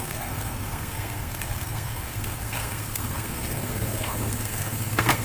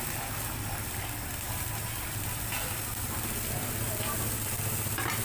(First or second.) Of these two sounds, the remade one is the first